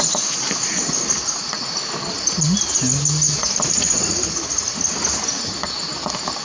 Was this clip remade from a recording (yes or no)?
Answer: no